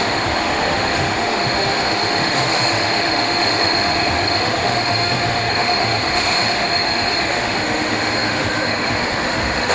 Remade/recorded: remade